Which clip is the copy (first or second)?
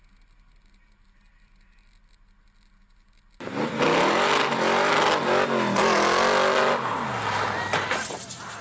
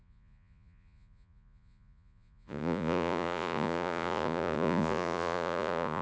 second